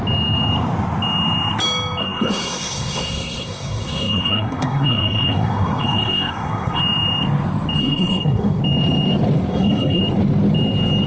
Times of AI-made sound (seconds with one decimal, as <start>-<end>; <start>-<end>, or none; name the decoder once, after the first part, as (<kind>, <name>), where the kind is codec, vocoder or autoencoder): 2.0-6.8 (codec, SNAC); 7.8-8.6; 9.5-10.0